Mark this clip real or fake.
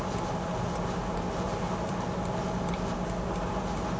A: real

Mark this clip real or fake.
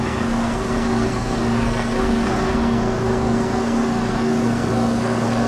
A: fake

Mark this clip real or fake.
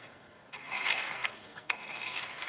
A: fake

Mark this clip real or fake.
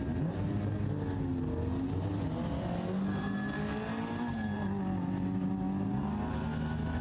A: real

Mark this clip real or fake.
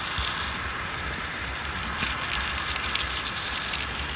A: real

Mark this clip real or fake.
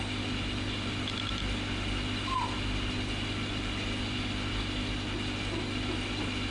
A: real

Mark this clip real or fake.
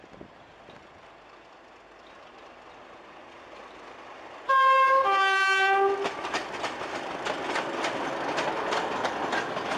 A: real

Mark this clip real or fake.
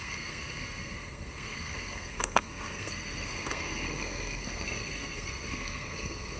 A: fake